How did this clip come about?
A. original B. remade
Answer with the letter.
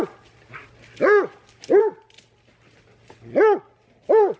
A